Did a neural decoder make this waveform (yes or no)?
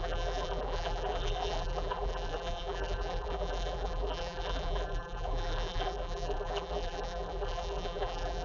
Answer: yes